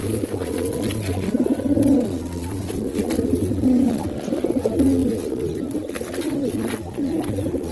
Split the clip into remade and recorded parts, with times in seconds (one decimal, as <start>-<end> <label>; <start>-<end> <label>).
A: 0.0-7.7 remade